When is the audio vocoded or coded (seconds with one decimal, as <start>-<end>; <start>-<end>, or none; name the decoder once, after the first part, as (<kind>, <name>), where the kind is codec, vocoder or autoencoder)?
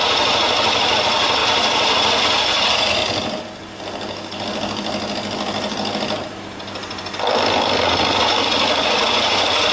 0.0-3.0 (vocoder, Vocos); 7.8-9.7